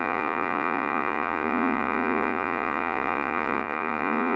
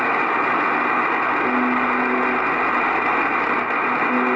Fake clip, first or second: first